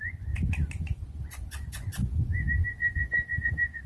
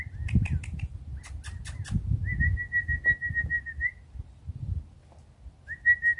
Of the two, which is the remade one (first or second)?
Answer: first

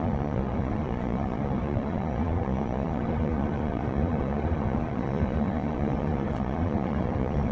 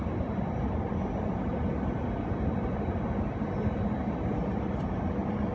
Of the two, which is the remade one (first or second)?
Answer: first